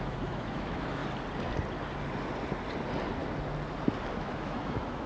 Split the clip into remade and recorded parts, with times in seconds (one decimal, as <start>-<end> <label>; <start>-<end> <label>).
0.0-1.0 remade; 1.0-4.1 recorded; 4.1-5.1 remade

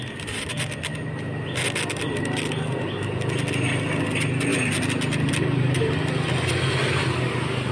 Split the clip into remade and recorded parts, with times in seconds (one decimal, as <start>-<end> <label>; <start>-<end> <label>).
0.0-0.5 remade; 0.5-7.7 recorded